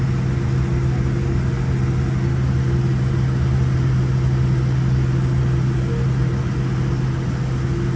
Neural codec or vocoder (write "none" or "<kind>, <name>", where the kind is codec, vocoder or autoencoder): none